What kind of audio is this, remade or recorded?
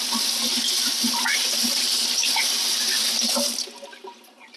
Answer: recorded